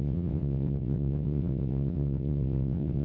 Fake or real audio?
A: fake